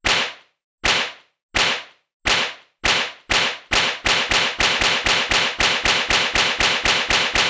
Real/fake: real